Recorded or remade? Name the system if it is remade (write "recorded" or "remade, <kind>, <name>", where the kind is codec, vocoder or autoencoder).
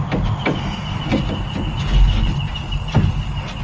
recorded